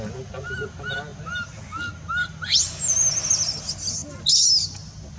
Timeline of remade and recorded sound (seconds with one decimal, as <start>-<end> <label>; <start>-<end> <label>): 0.0-5.2 recorded